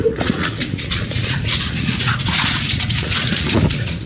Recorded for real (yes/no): no